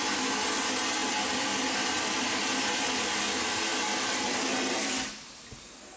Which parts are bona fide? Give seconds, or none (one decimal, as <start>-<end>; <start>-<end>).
0.0-6.0